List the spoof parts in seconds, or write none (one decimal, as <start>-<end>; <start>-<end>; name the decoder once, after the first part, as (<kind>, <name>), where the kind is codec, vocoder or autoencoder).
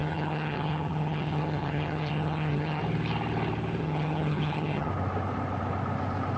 0.0-2.8 (vocoder, HiFi-GAN); 3.8-4.9